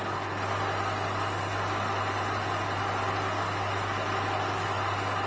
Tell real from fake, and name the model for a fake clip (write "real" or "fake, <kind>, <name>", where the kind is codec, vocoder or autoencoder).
real